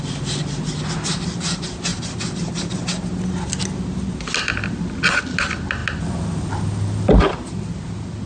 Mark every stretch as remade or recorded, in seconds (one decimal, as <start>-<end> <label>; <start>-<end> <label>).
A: 0.0-8.3 recorded